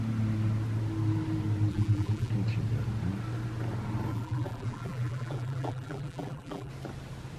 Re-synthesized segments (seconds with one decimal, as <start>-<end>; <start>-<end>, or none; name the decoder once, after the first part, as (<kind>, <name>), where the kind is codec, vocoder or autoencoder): 1.7-2.3 (vocoder, BigVGAN v2); 4.1-6.7